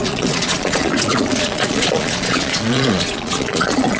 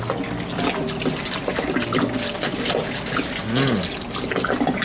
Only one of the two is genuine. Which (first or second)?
second